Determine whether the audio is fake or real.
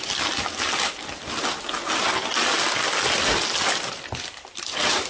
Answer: real